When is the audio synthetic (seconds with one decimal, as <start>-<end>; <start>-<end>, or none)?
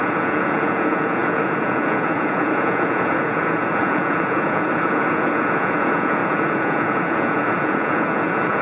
0.0-8.6